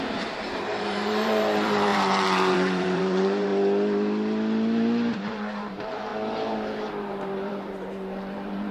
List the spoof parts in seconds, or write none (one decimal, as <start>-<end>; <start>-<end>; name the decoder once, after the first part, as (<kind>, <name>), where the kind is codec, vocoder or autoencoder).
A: 0.0-3.5 (vocoder, BigVGAN v2); 5.1-6.1; 6.9-8.7